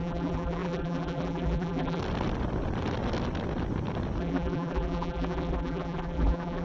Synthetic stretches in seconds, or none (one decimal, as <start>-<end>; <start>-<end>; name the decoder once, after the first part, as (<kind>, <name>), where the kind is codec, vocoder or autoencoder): 0.0-2.0 (vocoder, BigVGAN v2); 4.2-6.6